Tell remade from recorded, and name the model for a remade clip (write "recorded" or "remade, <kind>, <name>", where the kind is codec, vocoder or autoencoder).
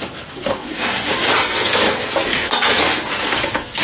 remade, codec, SNAC